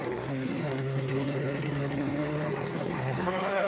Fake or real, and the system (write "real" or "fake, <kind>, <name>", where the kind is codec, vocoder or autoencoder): fake, codec, SNAC